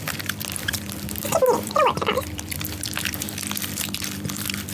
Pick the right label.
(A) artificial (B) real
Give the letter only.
A